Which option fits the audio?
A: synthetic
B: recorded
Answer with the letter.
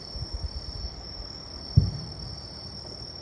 B